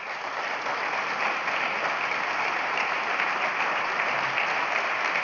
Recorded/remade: recorded